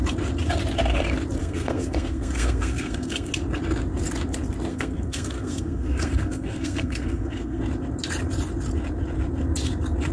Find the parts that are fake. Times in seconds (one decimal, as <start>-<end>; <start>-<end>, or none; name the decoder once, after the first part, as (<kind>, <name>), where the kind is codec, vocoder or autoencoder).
1.4-3.3 (codec, SNAC); 4.7-7.6